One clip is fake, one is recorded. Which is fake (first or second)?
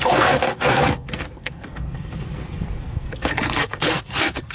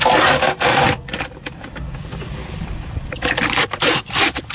first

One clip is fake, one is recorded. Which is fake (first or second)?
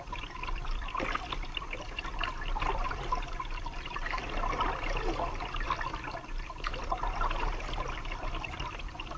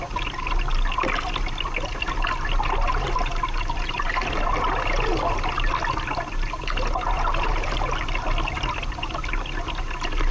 first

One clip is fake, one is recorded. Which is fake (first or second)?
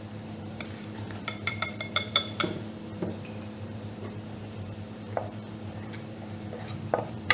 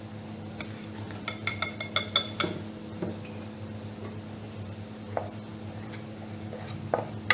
first